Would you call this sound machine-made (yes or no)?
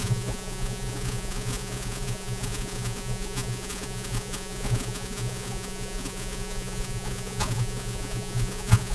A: yes